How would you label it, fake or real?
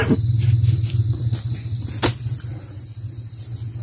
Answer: real